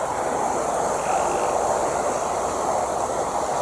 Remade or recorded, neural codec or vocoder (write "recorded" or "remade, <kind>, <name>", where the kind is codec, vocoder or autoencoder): recorded